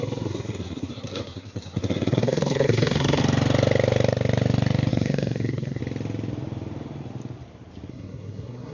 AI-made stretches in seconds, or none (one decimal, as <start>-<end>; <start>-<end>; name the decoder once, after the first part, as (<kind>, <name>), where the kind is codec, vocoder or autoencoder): 0.0-3.2 (codec, SNAC); 4.9-5.8; 7.9-8.7